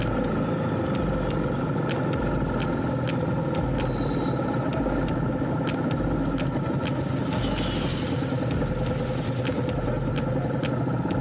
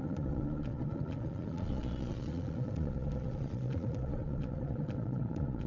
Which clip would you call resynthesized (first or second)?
second